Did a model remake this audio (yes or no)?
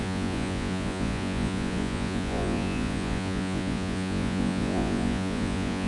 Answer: yes